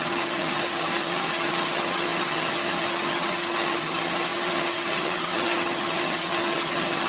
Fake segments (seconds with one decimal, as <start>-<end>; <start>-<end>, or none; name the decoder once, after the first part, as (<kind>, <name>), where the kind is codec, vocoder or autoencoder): 0.0-7.1 (vocoder, HiFi-GAN)